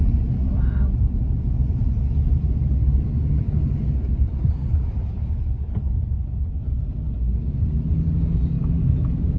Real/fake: real